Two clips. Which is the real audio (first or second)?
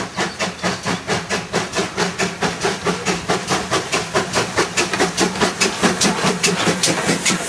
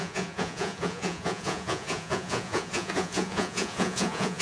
first